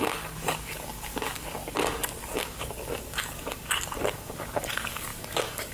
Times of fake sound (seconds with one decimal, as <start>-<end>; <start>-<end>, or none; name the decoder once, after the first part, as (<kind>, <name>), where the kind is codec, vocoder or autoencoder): 0.0-5.7 (codec, DAC)